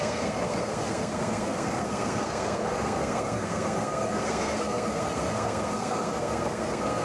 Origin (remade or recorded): remade